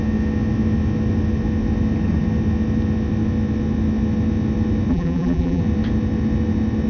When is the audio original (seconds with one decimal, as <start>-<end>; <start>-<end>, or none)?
0.0-4.9; 5.6-6.9